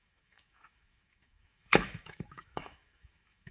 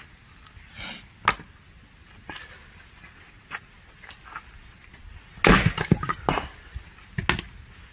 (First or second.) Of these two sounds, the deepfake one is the first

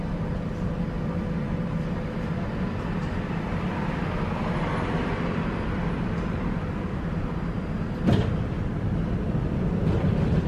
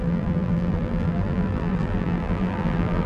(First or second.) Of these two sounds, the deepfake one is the second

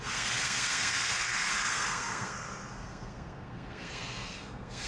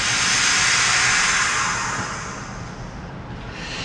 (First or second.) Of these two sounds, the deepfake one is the first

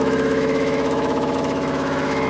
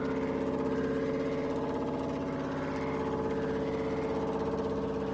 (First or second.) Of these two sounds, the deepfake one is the first